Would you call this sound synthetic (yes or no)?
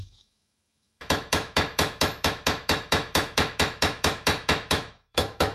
yes